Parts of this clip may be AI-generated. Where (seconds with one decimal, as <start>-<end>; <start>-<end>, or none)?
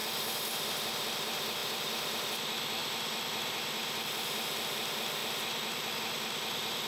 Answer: 1.6-2.2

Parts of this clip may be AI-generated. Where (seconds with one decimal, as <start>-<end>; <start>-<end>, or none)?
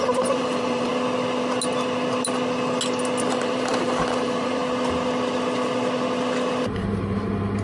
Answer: 0.0-0.9; 3.3-4.6; 6.7-7.6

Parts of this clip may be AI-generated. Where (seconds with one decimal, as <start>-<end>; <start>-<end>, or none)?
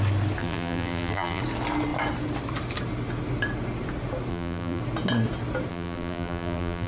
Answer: 0.4-1.4; 4.3-4.8; 5.7-6.9